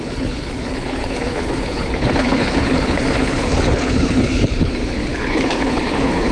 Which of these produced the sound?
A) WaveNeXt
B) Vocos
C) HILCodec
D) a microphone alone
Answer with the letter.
C